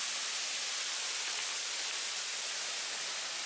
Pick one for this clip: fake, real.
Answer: real